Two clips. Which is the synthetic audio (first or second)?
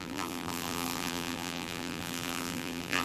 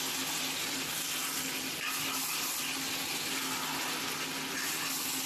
first